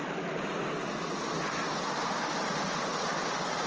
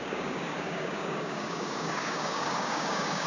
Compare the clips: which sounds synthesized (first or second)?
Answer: second